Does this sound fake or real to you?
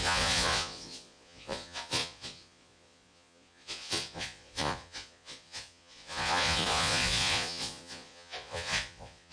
fake